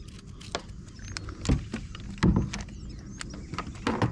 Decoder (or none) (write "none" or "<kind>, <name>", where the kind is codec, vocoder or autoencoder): none